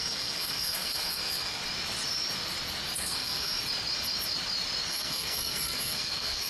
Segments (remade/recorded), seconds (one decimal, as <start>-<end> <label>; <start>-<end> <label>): 0.0-1.6 remade; 1.6-3.0 recorded; 3.0-3.5 remade; 3.5-4.9 recorded; 4.9-6.5 remade